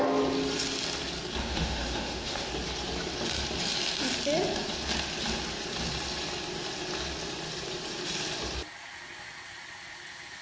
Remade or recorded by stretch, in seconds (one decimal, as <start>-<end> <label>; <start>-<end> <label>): 0.0-1.4 recorded; 1.4-2.5 remade; 2.5-10.4 recorded